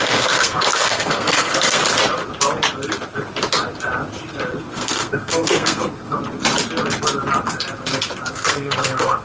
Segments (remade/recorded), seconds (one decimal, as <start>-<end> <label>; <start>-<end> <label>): 0.0-1.8 remade; 1.8-4.6 recorded; 4.6-6.2 remade; 6.2-8.3 recorded; 8.3-9.2 remade